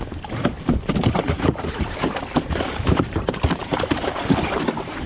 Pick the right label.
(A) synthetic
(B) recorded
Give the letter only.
A